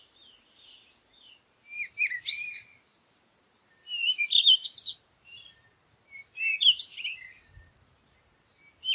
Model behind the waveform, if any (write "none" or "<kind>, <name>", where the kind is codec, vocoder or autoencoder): vocoder, BigVGAN v2